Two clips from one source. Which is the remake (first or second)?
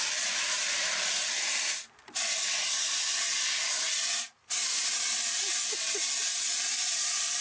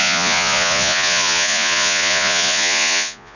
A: second